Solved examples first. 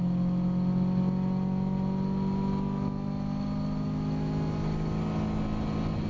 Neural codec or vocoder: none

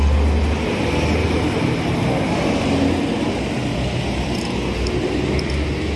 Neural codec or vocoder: none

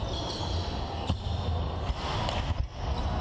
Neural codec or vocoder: none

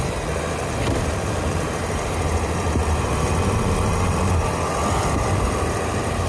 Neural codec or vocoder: none